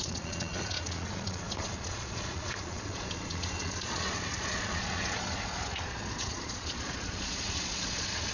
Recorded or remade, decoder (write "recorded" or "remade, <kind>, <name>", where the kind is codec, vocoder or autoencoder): remade, vocoder, Vocos